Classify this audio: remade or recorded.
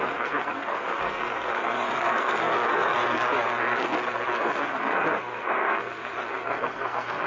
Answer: remade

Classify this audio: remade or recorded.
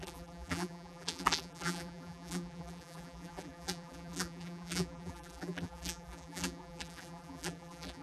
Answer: remade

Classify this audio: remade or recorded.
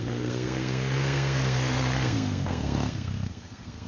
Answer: remade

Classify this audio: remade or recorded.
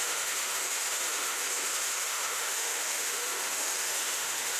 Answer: remade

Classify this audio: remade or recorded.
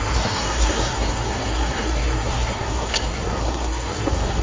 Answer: remade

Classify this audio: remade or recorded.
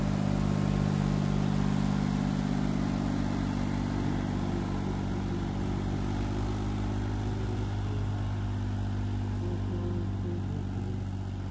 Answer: recorded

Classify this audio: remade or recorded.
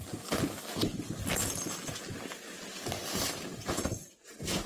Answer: recorded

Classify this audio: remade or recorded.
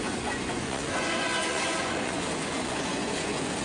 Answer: remade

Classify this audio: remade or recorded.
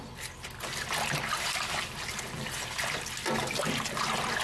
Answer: recorded